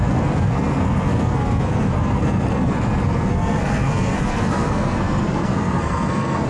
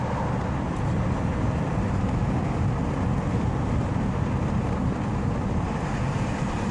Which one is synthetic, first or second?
first